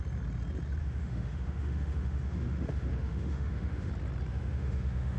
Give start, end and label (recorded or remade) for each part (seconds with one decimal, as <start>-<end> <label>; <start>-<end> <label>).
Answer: 0.0-0.8 recorded; 0.8-3.9 remade; 3.9-4.3 recorded; 4.3-5.2 remade